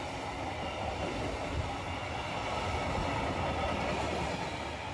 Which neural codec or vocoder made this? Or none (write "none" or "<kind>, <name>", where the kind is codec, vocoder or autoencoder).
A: none